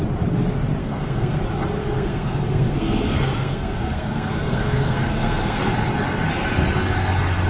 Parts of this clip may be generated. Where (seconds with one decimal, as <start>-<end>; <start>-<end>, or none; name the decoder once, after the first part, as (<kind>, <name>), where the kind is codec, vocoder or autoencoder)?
0.8-1.4 (codec, SNAC); 1.8-5.6

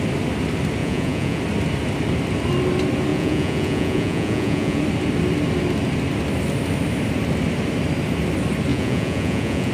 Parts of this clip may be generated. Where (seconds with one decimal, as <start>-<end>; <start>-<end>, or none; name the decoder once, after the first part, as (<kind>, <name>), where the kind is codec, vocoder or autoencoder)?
0.8-1.4 (vocoder, Vocos); 3.1-4.8; 8.7-9.7

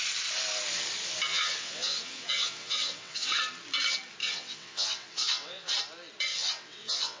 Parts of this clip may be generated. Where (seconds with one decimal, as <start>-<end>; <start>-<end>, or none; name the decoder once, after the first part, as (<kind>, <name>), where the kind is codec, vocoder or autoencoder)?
1.3-3.4 (vocoder, WaveNeXt); 4.2-5.7; 6.3-7.2

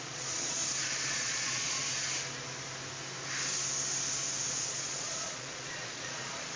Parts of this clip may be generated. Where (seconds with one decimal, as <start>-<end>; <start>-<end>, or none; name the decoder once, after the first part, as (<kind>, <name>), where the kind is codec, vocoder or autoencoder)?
0.0-0.6 (vocoder, Vocos); 1.1-1.8; 4.5-6.6

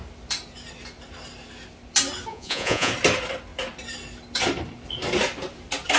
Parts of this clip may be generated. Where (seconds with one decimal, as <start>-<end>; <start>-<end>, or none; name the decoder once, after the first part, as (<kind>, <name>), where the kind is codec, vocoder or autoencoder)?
2.3-2.9 (vocoder, Vocos)

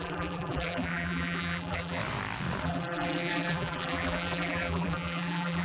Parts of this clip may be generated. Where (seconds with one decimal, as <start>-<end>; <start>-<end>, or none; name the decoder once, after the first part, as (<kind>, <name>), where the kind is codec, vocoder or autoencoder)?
0.0-2.0 (vocoder, BigVGAN v2); 2.6-5.6

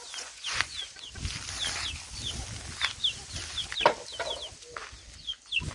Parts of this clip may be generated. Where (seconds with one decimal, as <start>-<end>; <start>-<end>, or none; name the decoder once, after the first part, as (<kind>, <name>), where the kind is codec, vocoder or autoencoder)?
0.0-1.1 (vocoder, Vocos)